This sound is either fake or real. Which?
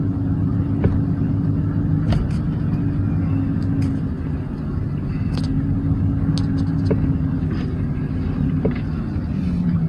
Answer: real